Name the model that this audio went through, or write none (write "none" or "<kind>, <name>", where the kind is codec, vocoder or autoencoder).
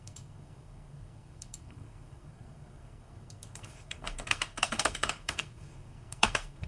codec, SNAC